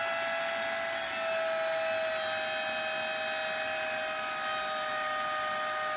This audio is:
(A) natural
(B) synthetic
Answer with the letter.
A